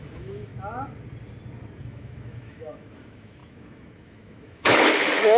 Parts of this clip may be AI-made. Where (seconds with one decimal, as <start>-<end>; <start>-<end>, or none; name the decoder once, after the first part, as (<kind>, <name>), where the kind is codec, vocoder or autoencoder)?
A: 0.0-0.5 (autoencoder, DAC-VAE); 1.8-5.4